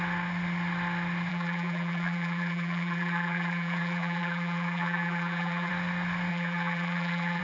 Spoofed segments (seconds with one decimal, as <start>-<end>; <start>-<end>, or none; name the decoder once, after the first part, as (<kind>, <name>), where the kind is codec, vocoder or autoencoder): 1.3-5.7 (vocoder, BigVGAN v2); 6.3-7.4